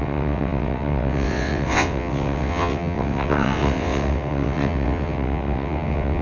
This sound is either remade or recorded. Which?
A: remade